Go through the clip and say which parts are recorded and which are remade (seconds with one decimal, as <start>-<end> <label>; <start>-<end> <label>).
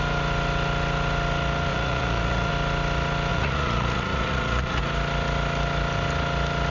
0.0-1.7 recorded; 1.7-2.5 remade; 2.5-3.3 recorded; 3.3-4.8 remade; 4.8-6.7 recorded